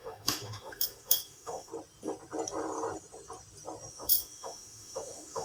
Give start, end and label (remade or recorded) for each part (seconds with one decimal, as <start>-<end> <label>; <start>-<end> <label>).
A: 0.0-1.7 remade; 1.7-3.9 recorded; 3.9-5.4 remade